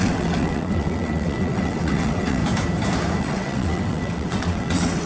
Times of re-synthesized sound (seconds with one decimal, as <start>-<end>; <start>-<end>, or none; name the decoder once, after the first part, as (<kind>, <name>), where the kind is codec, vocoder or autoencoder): 0.0-2.4 (vocoder, WaveNeXt); 3.2-5.1